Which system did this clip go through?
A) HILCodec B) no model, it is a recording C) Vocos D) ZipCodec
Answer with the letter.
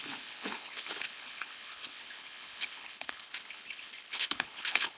A